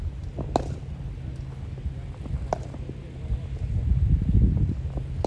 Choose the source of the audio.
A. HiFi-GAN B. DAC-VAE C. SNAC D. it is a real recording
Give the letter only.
D